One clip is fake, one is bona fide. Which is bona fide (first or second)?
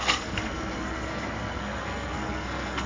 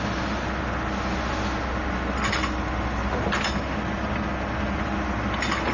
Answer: second